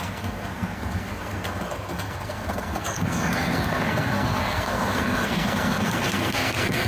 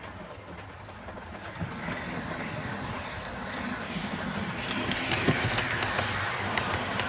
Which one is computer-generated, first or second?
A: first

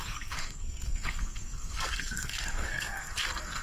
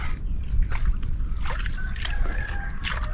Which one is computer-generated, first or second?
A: first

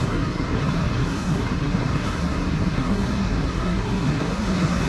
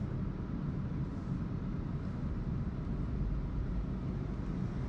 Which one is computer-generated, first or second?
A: first